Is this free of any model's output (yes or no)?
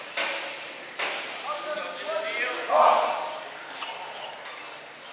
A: yes